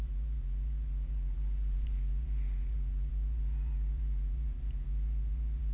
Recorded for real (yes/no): no